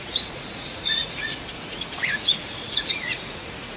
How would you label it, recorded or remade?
remade